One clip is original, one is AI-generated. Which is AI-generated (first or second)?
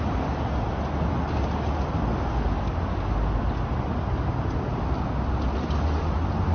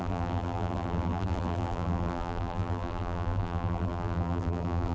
second